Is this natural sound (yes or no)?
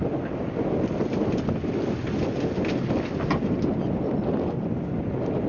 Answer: yes